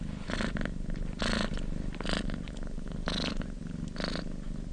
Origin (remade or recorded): recorded